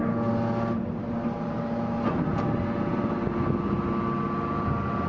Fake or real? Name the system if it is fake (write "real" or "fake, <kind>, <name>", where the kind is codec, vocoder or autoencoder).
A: real